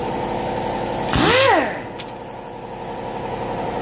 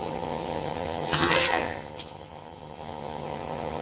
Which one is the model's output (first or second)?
second